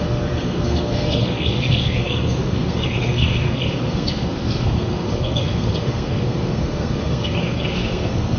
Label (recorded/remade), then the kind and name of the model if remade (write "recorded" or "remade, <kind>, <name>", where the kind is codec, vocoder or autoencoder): remade, codec, SNAC